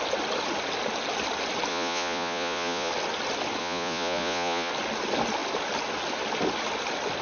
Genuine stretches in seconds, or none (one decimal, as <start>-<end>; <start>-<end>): 0.0-1.7; 2.9-3.6; 4.7-7.2